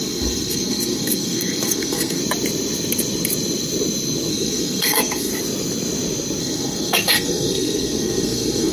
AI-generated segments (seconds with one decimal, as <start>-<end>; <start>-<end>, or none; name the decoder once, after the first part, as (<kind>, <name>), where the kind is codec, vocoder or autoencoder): 0.0-2.2 (codec, SNAC); 4.3-5.3; 6.4-8.7